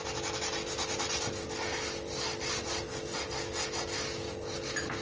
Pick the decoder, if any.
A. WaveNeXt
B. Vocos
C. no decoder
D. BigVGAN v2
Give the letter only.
C